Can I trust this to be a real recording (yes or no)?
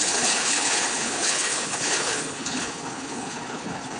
no